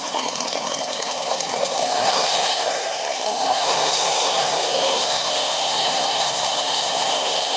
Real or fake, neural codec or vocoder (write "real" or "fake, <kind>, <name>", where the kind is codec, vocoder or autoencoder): fake, codec, SNAC